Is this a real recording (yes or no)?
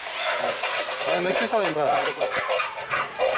no